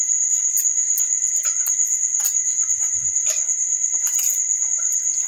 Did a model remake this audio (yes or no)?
no